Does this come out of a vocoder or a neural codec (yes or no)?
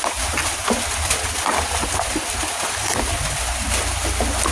no